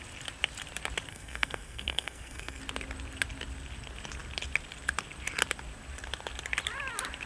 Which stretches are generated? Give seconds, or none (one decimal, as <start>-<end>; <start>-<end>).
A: 1.1-2.6